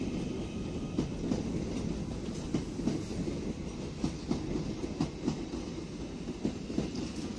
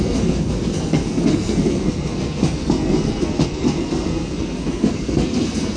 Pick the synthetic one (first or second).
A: second